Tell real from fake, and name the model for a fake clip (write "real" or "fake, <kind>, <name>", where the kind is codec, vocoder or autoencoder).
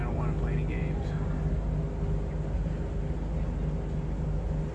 real